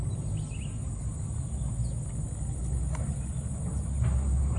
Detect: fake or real real